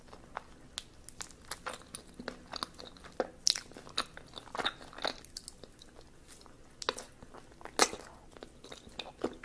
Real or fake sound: real